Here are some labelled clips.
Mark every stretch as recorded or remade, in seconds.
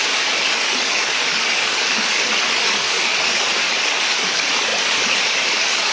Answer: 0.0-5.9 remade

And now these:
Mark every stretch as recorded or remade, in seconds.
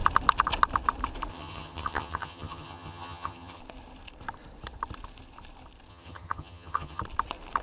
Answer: 0.0-1.3 recorded; 1.3-3.6 remade; 3.6-5.9 recorded; 5.9-7.0 remade; 7.0-7.6 recorded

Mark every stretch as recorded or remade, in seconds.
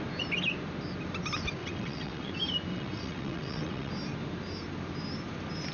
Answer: 0.0-1.6 recorded; 1.6-2.3 remade; 2.3-2.7 recorded; 2.7-3.9 remade; 3.9-5.7 recorded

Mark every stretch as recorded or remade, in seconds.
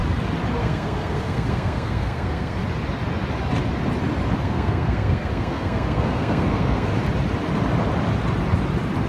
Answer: 0.0-0.6 recorded; 0.6-2.6 remade; 2.6-4.4 recorded; 4.4-6.9 remade; 6.9-9.1 recorded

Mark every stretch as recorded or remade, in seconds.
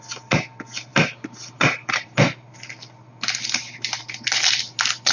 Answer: 0.0-5.1 recorded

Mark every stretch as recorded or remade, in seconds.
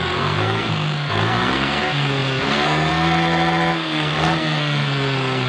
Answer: 0.0-5.5 remade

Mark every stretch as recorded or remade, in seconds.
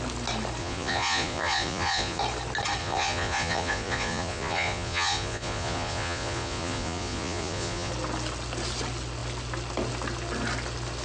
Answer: 0.0-0.6 recorded; 0.6-2.2 remade; 2.2-2.8 recorded; 2.8-7.9 remade; 7.9-11.0 recorded